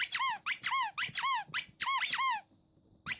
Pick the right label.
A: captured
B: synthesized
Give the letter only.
A